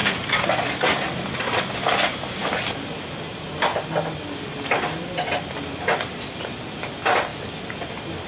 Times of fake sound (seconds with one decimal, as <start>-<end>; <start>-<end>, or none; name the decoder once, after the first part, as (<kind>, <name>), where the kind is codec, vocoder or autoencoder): none